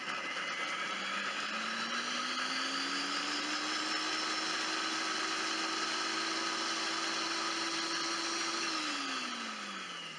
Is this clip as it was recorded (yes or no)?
yes